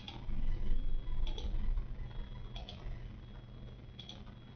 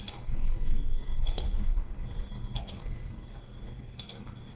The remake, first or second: second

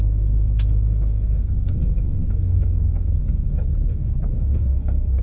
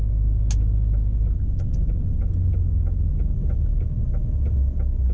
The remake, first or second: first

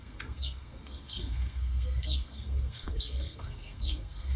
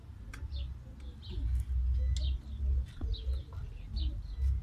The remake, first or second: first